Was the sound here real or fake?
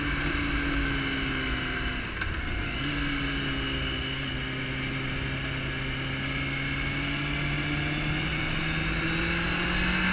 real